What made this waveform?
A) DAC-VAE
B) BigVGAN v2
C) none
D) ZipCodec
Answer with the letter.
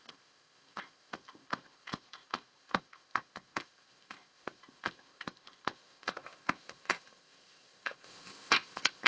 D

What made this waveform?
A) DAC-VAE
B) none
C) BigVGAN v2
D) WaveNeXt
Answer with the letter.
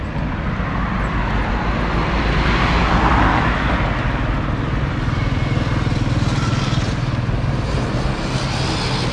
B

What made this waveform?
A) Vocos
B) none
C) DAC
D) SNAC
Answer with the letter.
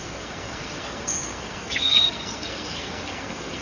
D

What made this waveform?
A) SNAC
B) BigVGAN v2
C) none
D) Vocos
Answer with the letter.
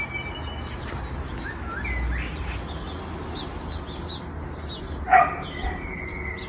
C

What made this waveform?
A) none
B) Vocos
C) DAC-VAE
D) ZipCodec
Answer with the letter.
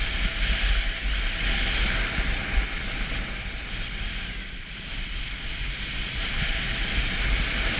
A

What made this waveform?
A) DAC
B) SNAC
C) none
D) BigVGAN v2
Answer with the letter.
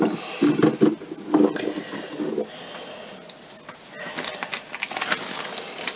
C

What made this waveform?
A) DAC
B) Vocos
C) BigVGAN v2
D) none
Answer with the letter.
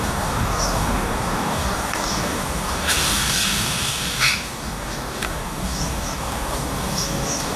A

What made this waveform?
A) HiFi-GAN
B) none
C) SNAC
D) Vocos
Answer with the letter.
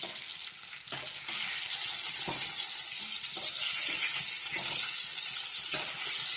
B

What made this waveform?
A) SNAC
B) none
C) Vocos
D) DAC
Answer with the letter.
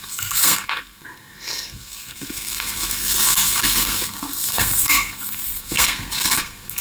A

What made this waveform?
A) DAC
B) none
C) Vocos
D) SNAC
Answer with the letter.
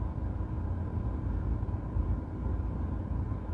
B